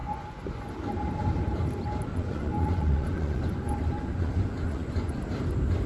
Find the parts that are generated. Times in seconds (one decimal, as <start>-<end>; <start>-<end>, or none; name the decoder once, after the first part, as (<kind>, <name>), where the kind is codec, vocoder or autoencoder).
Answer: 0.0-0.7 (vocoder, Vocos); 2.1-5.2